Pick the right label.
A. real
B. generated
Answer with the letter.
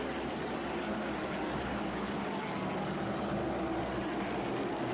A